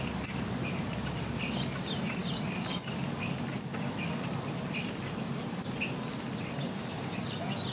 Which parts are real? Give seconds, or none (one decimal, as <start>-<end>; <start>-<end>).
0.0-7.7